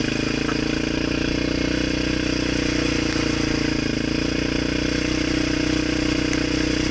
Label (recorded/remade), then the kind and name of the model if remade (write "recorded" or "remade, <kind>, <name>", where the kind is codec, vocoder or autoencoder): recorded